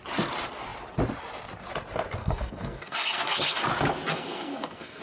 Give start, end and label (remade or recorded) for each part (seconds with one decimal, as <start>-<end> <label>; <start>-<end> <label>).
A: 0.0-2.2 recorded; 2.2-3.6 remade; 3.6-4.1 recorded; 4.1-5.0 remade